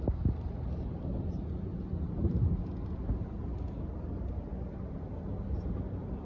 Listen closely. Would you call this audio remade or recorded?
recorded